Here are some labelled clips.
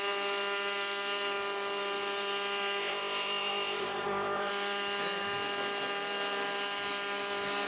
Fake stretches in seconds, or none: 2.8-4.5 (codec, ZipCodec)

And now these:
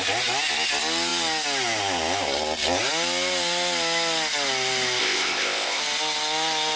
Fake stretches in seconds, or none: 5.0-5.8 (codec, ZipCodec)

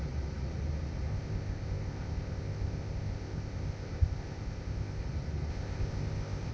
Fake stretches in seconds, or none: 1.1-5.0 (codec, ZipCodec); 5.5-6.5